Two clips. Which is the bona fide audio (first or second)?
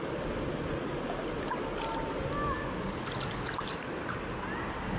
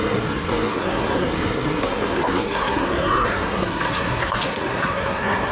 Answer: first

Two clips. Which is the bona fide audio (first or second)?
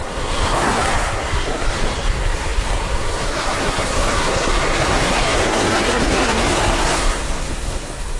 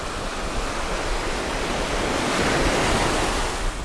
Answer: second